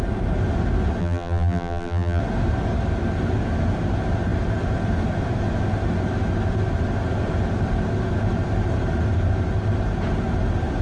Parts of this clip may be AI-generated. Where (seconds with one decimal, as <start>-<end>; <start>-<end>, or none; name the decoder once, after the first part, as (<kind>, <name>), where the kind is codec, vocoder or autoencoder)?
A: 1.0-2.2 (vocoder, BigVGAN v2)